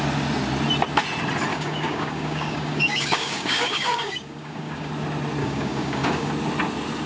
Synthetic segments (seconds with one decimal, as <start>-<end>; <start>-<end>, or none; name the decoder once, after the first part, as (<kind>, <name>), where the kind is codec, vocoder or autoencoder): 1.5-4.9 (codec, DAC); 5.4-6.3